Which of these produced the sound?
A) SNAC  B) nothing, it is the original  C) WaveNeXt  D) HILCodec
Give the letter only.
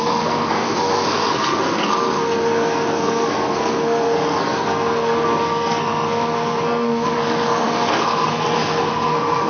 A